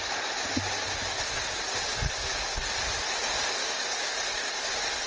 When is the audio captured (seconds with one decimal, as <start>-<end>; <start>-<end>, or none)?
0.0-3.6; 4.1-5.1